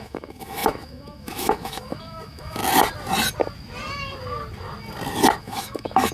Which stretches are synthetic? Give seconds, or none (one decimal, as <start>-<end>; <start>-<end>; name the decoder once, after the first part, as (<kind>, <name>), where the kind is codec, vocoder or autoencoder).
0.0-2.6 (autoencoder, DAC-VAE); 5.4-6.1